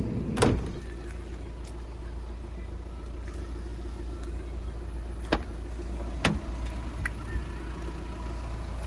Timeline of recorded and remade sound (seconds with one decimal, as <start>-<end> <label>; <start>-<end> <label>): 0.0-8.9 recorded